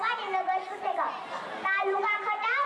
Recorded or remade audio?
recorded